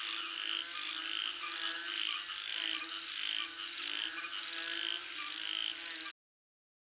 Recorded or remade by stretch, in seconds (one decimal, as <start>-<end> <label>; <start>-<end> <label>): 0.0-6.8 recorded